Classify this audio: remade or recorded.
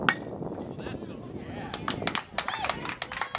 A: recorded